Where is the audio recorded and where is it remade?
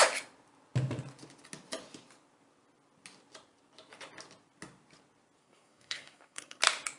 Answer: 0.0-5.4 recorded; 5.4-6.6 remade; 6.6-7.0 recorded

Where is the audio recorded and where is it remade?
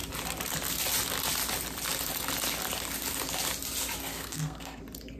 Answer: 0.0-4.0 recorded; 4.0-4.8 remade; 4.8-5.2 recorded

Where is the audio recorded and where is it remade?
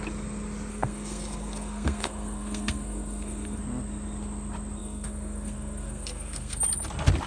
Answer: 0.0-0.7 recorded; 0.7-3.6 remade; 3.6-4.8 recorded; 4.8-6.6 remade; 6.6-7.3 recorded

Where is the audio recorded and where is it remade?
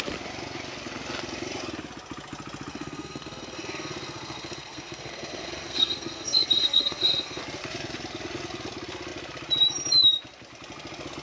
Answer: 0.0-2.7 recorded; 2.7-7.4 remade; 7.4-11.2 recorded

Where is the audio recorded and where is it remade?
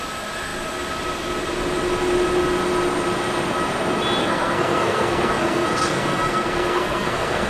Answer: 0.0-4.2 recorded; 4.2-7.5 remade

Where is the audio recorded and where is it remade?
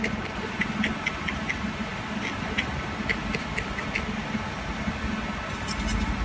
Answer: 0.0-6.2 recorded